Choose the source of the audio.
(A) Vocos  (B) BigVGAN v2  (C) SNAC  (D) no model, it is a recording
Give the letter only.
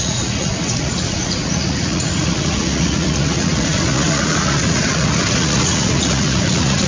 A